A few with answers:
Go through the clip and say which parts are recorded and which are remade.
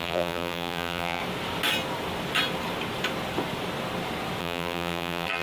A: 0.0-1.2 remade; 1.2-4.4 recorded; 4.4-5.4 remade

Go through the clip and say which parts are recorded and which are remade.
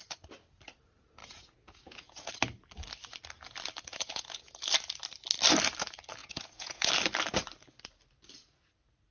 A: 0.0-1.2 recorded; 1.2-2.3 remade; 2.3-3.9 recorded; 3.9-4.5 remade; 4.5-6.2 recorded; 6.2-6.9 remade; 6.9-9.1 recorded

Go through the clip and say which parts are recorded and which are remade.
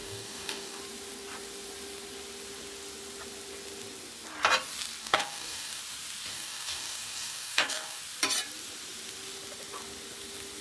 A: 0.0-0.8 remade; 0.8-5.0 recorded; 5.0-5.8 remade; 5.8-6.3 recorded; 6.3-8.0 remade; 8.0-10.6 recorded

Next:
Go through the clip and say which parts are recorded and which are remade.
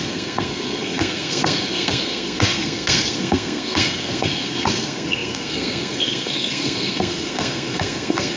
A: 0.0-8.4 remade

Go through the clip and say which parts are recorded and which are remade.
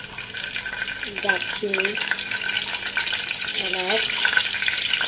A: 0.0-1.2 recorded; 1.2-2.4 remade; 2.4-3.5 recorded; 3.5-4.6 remade; 4.6-5.1 recorded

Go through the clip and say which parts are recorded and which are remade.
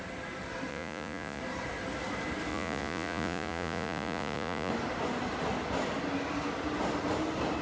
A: 0.0-0.7 recorded; 0.7-1.4 remade; 1.4-2.5 recorded; 2.5-4.7 remade; 4.7-7.6 recorded